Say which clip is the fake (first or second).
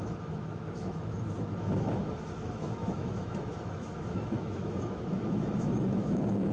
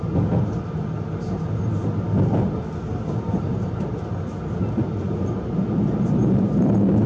first